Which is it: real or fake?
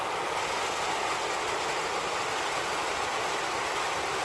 real